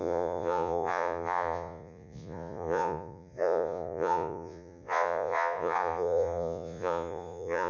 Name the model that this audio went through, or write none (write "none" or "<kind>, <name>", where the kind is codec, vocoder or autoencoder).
vocoder, Vocos